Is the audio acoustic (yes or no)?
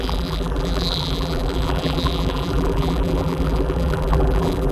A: no